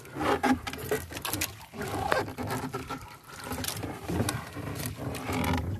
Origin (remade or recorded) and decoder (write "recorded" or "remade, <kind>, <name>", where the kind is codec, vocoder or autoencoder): recorded